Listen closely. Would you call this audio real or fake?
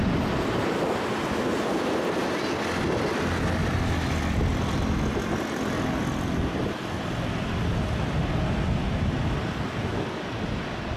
real